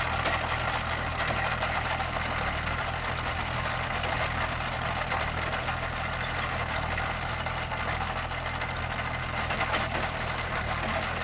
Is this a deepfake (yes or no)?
no